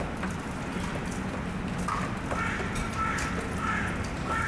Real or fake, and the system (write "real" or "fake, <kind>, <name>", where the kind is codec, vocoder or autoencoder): real